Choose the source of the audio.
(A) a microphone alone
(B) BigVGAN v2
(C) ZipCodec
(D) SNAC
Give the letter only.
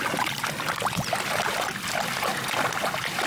A